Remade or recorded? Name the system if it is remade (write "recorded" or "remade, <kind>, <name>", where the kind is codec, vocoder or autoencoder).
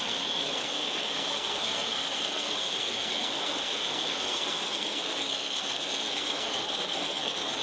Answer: remade, codec, SNAC